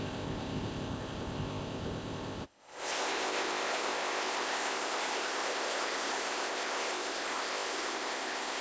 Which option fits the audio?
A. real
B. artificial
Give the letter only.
B